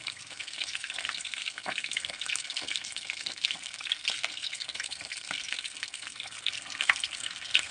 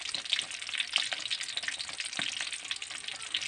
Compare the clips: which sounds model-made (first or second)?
first